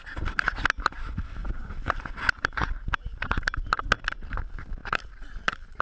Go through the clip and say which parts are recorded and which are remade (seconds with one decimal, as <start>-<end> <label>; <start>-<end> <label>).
0.0-1.4 recorded; 1.4-2.1 remade; 2.1-4.8 recorded; 4.8-5.8 remade